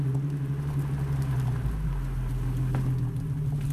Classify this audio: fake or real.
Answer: real